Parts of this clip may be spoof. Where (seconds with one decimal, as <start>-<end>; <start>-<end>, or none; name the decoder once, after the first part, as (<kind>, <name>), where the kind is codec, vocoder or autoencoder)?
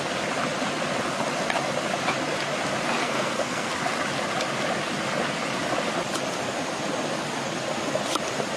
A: 3.0-3.7 (codec, SNAC)